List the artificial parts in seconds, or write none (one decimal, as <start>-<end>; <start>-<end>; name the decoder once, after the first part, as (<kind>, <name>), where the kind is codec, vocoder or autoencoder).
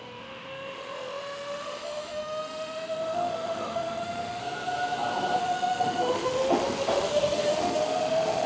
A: 0.0-4.4 (autoencoder, DAC-VAE); 5.4-8.5